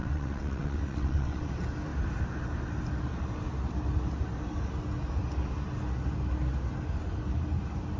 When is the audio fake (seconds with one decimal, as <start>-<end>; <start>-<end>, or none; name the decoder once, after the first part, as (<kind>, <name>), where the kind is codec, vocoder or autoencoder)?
0.0-1.5 (vocoder, WaveNeXt)